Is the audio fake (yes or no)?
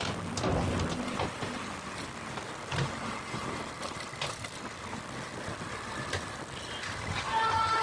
no